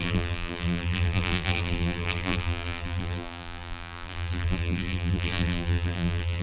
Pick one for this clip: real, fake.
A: fake